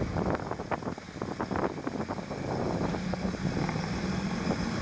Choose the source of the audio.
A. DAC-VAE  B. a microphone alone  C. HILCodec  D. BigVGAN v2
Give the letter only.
B